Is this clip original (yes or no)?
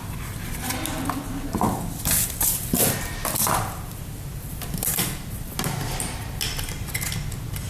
yes